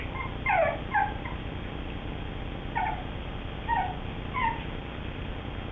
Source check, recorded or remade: recorded